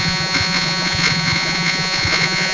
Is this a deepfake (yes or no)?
yes